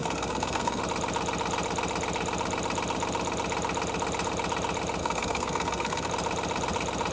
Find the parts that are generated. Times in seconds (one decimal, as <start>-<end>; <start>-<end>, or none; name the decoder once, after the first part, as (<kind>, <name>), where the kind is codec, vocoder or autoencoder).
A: 0.0-0.8 (codec, SNAC); 5.0-6.1